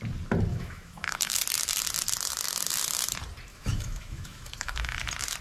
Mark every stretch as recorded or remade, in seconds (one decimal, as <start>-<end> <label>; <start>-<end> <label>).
0.0-0.5 recorded; 0.5-1.4 remade; 1.4-3.5 recorded; 3.5-5.0 remade; 5.0-5.4 recorded